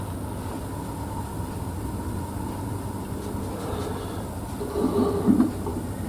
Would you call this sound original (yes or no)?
yes